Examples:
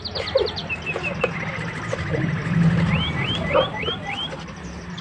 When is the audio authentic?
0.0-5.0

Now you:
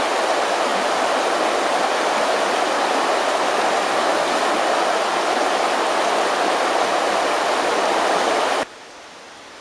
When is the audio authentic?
0.0-9.6

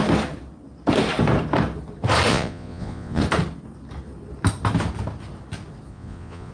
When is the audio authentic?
0.0-2.3; 3.2-5.9

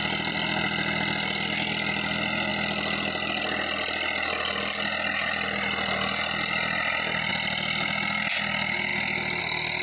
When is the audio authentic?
0.0-9.8

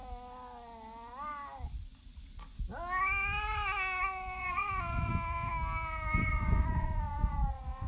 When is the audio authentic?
0.0-4.0; 5.1-6.3

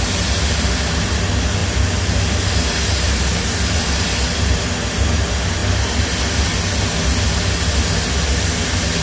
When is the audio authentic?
0.0-9.0